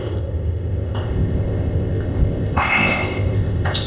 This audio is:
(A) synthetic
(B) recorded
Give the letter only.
A